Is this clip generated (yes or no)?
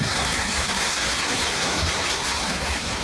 yes